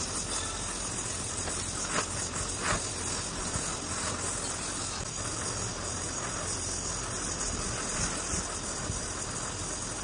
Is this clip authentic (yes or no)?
yes